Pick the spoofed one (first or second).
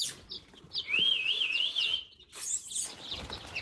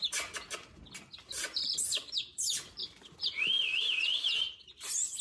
second